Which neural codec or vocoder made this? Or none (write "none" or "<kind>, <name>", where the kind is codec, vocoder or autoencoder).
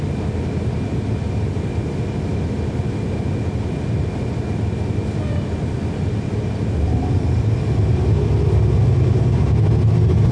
none